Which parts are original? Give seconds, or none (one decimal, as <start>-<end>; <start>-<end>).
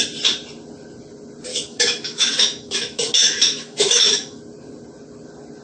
0.0-1.5; 4.4-5.6